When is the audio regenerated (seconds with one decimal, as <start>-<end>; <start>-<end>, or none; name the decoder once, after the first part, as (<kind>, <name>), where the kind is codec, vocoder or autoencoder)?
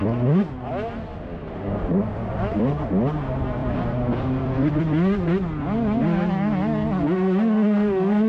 3.6-4.8 (vocoder, BigVGAN v2)